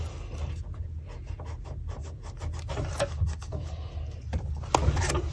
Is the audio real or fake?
real